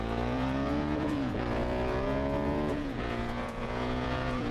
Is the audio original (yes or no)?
no